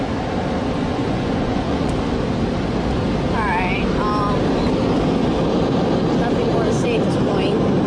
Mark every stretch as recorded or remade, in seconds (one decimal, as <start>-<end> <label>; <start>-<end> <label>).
0.0-0.6 recorded; 0.6-1.9 remade; 1.9-7.9 recorded